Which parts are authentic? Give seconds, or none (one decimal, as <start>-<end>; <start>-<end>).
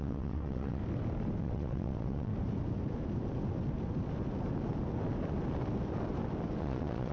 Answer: 0.8-1.4; 2.3-6.6